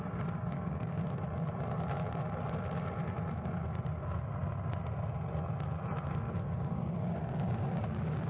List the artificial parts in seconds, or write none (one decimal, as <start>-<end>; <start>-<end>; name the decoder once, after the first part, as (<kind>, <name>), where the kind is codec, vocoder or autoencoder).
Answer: 0.0-1.0 (codec, DAC); 6.0-8.3

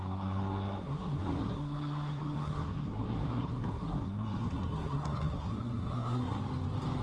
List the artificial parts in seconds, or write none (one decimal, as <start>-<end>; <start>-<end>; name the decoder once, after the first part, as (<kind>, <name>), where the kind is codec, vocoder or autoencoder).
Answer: 0.0-6.4 (codec, SNAC)

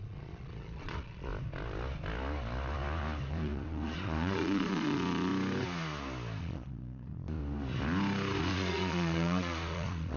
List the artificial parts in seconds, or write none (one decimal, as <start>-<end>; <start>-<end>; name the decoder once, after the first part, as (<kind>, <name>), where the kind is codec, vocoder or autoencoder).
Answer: 0.0-1.3 (vocoder, Vocos); 3.3-5.3; 6.4-7.4; 8.4-10.2

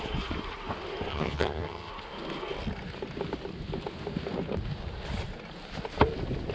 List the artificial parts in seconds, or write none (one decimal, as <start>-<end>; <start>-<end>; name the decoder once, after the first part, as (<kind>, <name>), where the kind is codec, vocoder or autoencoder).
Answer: 1.1-1.9 (vocoder, HiFi-GAN)

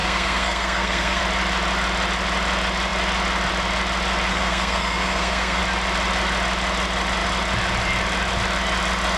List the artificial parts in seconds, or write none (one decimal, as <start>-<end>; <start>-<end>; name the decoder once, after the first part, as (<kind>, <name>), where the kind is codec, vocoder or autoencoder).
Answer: 0.0-1.2 (codec, SNAC); 4.3-5.6

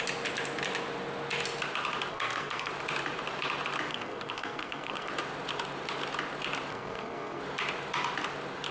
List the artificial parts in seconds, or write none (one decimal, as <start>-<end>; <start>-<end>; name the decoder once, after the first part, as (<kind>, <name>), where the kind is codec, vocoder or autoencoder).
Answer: 2.1-2.7 (codec, SNAC); 3.9-5.1; 6.7-7.4